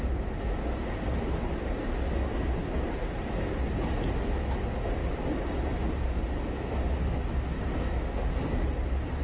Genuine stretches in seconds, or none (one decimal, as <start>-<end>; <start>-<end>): 0.0-9.2